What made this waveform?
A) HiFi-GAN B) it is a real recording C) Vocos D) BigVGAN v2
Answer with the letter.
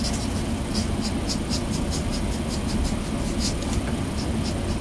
B